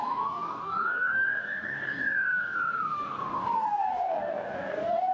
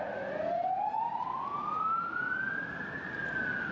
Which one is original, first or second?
second